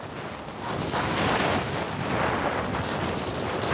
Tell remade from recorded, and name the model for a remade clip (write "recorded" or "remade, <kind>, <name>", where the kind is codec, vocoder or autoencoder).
recorded